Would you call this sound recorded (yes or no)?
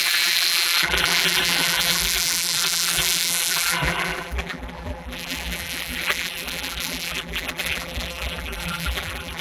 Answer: no